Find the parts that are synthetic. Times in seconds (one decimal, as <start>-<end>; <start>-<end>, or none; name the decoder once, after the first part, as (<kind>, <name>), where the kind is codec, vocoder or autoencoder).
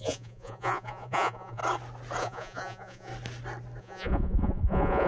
0.0-1.6 (vocoder, Vocos); 2.2-3.1; 3.8-5.1